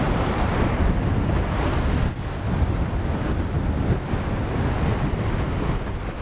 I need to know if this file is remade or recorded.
recorded